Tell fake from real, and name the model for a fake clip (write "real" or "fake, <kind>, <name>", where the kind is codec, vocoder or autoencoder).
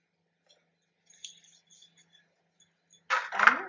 real